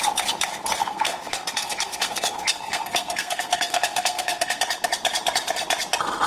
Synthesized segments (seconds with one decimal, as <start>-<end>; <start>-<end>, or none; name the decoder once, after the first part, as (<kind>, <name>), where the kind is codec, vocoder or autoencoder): 0.8-4.6 (codec, SNAC)